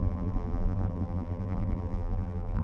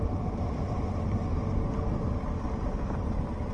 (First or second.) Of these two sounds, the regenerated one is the first